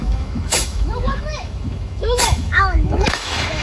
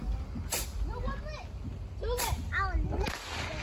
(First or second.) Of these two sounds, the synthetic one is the first